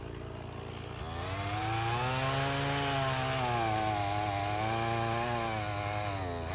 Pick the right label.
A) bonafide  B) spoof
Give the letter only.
A